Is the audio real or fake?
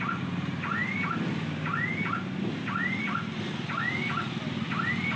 real